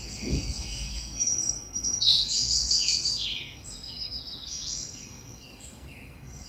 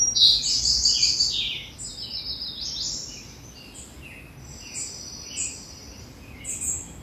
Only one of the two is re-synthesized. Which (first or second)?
first